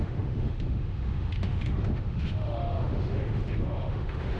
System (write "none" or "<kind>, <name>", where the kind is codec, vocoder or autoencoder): autoencoder, DAC-VAE